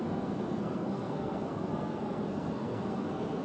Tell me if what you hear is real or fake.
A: fake